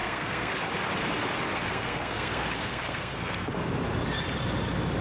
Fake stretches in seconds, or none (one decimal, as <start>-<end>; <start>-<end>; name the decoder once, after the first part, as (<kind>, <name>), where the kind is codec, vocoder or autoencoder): 0.0-0.5 (codec, SNAC); 1.5-3.5